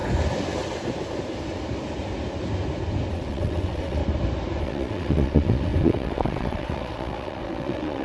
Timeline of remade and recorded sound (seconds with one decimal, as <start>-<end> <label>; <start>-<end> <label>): 0.0-3.1 recorded; 3.1-4.0 remade; 4.0-4.6 recorded; 4.6-8.0 remade